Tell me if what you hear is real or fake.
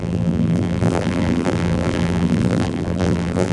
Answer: fake